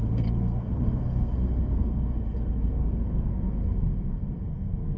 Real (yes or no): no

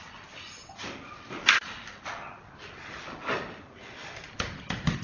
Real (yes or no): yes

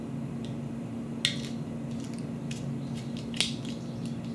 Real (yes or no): yes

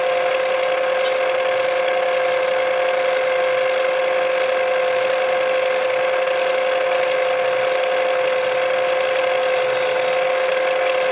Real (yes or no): yes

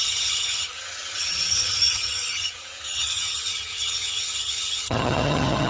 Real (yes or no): no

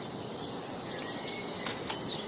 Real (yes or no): yes